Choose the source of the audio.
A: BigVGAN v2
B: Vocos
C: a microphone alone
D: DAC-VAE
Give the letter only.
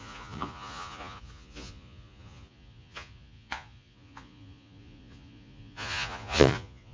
B